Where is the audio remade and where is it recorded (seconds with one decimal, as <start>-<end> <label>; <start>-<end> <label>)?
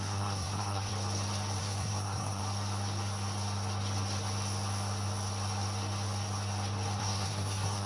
0.0-0.9 remade; 0.9-1.6 recorded; 1.6-2.4 remade; 2.4-7.0 recorded; 7.0-7.9 remade